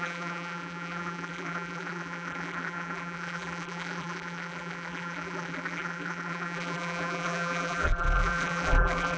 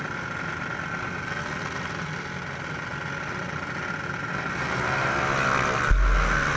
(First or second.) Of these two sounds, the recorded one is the second